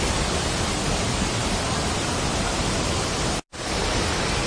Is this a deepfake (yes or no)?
no